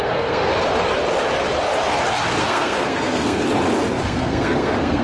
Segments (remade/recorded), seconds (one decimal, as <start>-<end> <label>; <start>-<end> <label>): 0.0-0.5 remade; 0.5-2.4 recorded; 2.4-3.4 remade; 3.4-3.9 recorded; 3.9-5.0 remade